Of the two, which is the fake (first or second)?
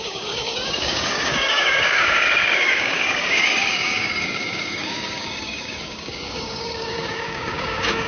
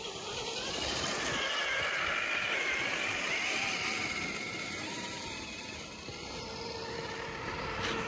first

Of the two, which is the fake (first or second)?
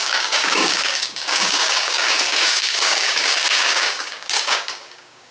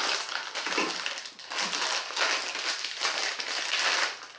first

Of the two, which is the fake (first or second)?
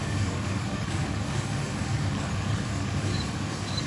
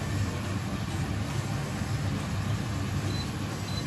first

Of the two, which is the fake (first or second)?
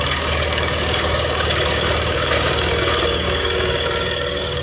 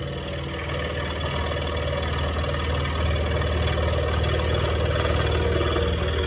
first